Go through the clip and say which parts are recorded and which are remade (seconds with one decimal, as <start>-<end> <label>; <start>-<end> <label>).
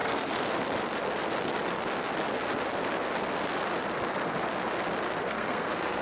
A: 0.0-0.5 remade; 0.5-5.2 recorded; 5.2-6.0 remade